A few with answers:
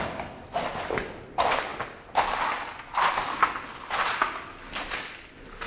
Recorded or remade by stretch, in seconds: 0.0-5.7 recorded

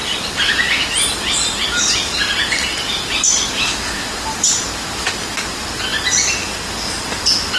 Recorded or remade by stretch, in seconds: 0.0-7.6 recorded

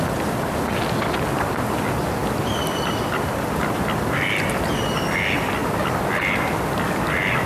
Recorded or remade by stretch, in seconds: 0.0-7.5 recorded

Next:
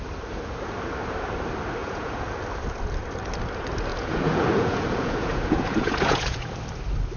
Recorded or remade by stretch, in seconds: 0.0-1.8 recorded; 1.8-2.3 remade; 2.3-3.9 recorded; 3.9-6.5 remade; 6.5-7.2 recorded

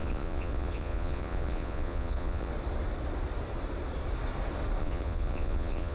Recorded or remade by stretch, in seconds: 0.0-2.5 remade; 2.5-4.8 recorded; 4.8-5.9 remade

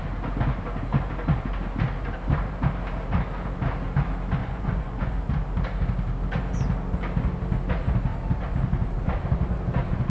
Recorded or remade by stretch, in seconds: 0.0-4.4 recorded; 4.4-5.1 remade; 5.1-10.1 recorded

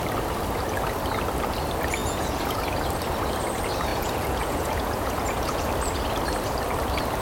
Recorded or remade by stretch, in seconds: 0.0-2.0 recorded; 2.0-2.6 remade; 2.6-3.9 recorded; 3.9-5.7 remade; 5.7-7.2 recorded